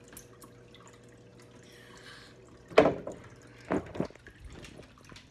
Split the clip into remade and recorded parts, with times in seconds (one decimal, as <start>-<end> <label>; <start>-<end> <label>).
0.0-5.3 recorded